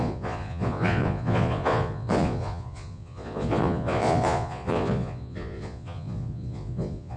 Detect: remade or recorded remade